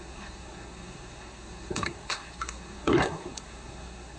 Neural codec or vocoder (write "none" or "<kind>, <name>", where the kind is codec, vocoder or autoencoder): codec, SNAC